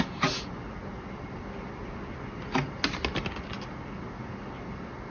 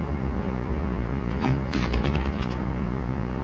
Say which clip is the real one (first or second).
first